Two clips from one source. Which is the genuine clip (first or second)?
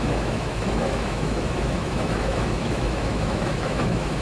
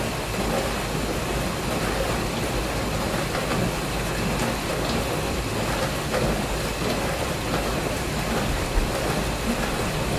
second